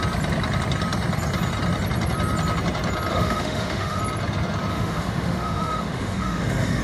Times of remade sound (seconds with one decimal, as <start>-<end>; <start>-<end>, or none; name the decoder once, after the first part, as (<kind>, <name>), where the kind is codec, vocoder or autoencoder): 3.1-4.0 (autoencoder, DAC-VAE); 4.7-6.8